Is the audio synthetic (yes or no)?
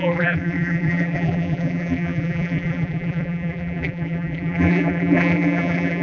yes